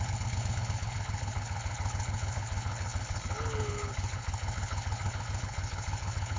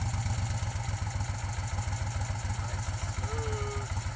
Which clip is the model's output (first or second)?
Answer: first